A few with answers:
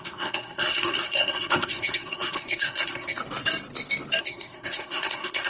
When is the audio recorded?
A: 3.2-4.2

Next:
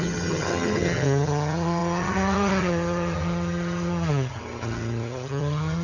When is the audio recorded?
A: none

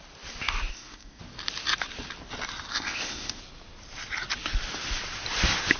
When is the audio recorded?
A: 0.0-0.7; 1.2-2.7; 3.4-5.8